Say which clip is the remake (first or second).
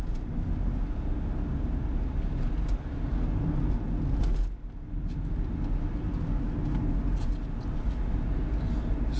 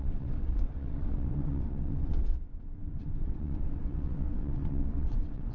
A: second